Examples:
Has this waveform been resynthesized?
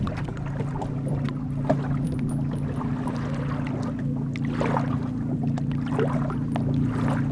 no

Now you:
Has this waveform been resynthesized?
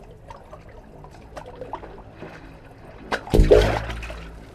no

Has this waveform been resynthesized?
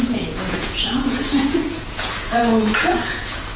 yes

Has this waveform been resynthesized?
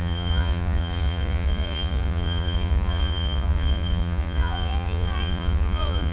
yes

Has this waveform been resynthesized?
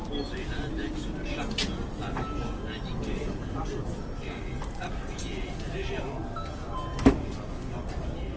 no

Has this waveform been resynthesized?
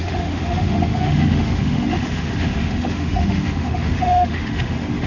yes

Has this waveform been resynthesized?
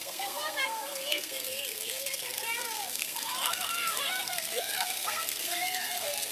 yes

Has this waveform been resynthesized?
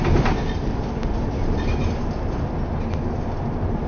no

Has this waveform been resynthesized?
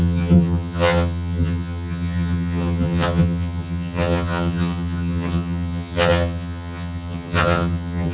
yes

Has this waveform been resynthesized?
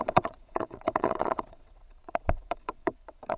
yes